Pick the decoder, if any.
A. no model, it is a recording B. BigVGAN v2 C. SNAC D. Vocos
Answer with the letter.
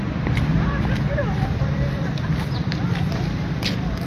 B